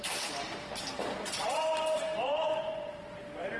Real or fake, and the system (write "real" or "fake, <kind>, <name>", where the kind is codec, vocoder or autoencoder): fake, vocoder, BigVGAN v2